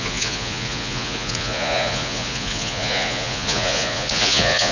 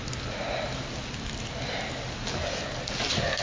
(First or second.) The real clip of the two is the second